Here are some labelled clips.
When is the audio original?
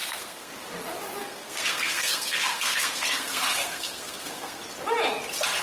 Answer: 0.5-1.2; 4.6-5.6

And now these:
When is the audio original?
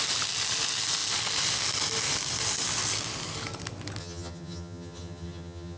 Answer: 0.0-4.0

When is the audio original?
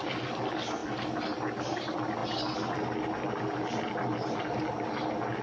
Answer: 0.0-5.4